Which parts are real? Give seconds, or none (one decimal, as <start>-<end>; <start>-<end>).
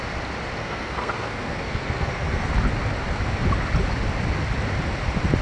0.0-0.6; 2.5-5.4